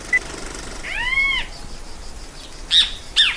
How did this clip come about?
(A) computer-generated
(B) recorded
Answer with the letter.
B